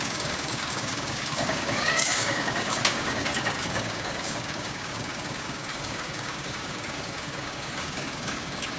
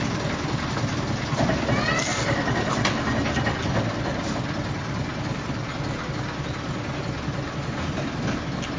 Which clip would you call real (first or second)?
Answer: second